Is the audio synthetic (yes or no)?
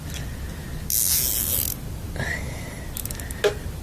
no